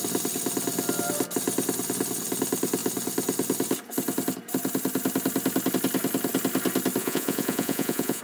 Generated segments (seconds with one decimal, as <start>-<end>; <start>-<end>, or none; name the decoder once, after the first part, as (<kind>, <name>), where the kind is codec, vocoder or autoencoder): 7.0-8.2 (vocoder, Vocos)